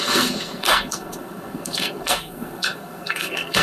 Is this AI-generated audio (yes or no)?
yes